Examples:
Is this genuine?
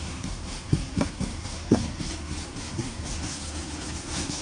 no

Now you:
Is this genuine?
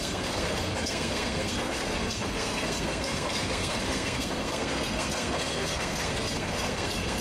no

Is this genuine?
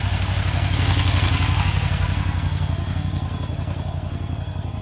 no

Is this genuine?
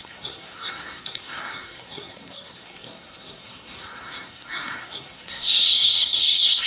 no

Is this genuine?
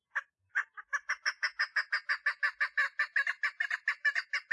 yes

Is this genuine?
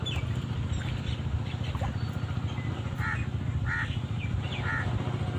yes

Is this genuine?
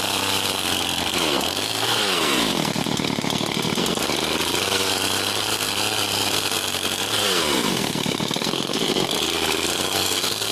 no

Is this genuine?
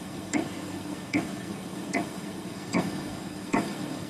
no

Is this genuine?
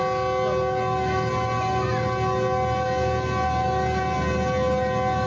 yes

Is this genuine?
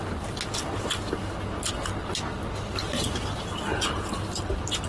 yes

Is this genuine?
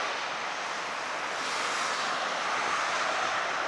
yes